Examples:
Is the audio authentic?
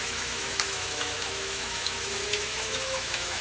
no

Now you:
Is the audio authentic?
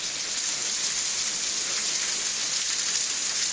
yes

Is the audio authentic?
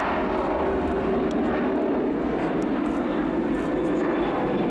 yes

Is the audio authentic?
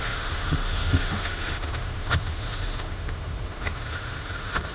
no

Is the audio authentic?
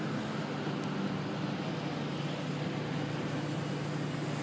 yes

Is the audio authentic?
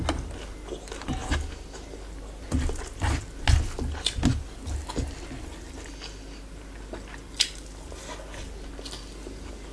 yes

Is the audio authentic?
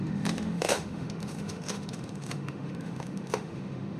no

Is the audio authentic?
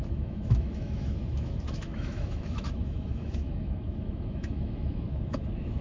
no